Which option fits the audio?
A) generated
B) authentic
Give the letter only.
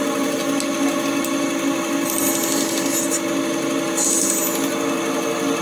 B